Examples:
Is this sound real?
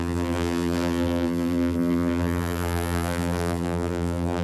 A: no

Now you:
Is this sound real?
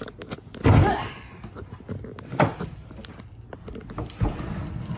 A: yes